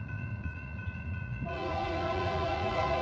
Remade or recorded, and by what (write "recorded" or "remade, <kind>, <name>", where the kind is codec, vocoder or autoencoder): remade, vocoder, Vocos